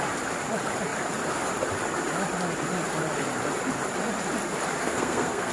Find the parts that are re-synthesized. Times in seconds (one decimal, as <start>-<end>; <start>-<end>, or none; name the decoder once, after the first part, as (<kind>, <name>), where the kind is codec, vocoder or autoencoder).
4.8-5.5 (codec, SNAC)

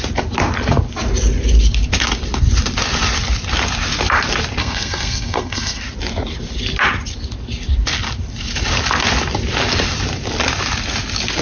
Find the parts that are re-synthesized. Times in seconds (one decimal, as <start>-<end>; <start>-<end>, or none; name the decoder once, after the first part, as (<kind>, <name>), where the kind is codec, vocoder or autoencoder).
4.6-5.8 (codec, SNAC)

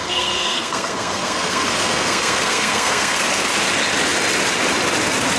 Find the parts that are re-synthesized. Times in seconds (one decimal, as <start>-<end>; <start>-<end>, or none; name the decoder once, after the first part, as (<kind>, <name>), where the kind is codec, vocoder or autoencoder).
0.0-3.2 (codec, SNAC)

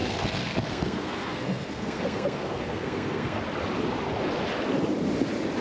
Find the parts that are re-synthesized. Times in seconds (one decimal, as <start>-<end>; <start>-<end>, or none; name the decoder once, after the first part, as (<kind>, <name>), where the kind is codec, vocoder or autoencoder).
0.0-3.4 (codec, SNAC)

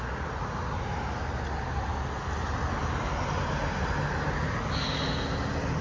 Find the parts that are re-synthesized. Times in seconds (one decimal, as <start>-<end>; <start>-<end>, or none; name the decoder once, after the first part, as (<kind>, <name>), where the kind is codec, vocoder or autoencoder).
none

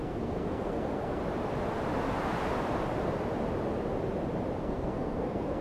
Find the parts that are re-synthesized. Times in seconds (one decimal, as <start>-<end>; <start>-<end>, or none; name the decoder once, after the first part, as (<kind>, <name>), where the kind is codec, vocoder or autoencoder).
0.0-1.2 (codec, SNAC); 4.6-5.6

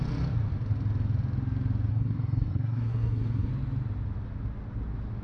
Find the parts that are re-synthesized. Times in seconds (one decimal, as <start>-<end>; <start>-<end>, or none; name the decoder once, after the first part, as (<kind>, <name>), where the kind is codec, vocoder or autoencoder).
1.9-3.5 (codec, SNAC)

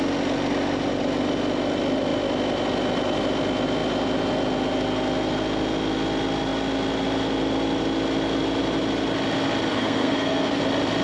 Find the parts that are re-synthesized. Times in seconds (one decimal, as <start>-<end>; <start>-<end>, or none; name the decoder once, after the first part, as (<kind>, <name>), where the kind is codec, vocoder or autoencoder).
9.7-10.6 (codec, SNAC)